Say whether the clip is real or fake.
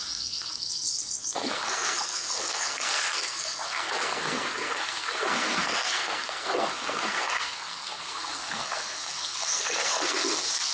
fake